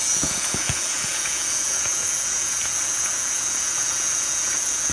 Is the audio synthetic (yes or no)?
yes